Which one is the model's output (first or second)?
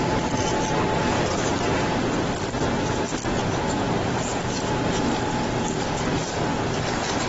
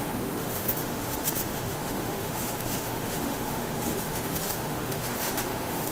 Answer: second